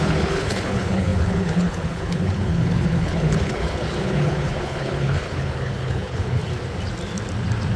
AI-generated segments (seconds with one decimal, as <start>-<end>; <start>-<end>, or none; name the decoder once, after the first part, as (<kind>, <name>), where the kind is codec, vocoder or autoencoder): 0.0-6.4 (codec, HILCodec)